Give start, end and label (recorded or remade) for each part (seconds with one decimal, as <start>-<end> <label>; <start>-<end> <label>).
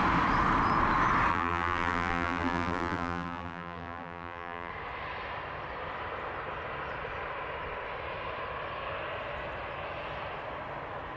0.0-1.3 recorded; 1.3-4.7 remade; 4.7-11.2 recorded